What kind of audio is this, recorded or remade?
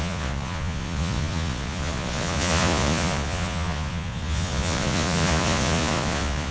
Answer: remade